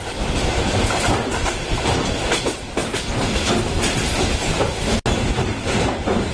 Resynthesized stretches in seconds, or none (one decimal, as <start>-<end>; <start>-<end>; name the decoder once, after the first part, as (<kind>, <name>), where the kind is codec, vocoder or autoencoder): none